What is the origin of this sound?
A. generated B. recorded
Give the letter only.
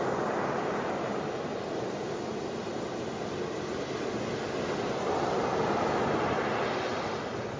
B